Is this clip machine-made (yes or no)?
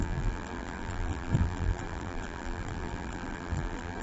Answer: yes